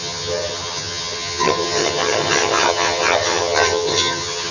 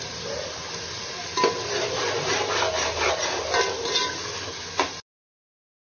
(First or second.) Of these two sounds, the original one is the second